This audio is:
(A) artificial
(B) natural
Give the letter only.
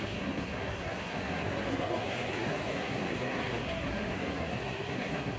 A